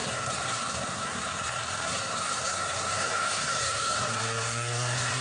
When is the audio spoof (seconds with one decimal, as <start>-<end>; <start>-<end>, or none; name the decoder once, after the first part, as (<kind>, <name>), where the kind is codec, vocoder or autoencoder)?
0.0-5.2 (codec, SNAC)